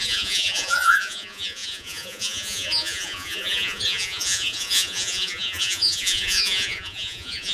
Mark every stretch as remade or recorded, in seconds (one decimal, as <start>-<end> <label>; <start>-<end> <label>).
0.0-7.5 remade